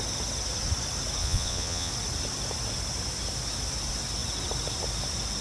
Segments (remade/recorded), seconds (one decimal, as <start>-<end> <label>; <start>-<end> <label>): 0.0-1.2 recorded; 1.2-1.9 remade; 1.9-5.4 recorded